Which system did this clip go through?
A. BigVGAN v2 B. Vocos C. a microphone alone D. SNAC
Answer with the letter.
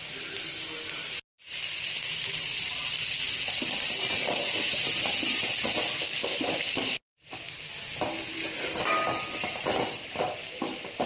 C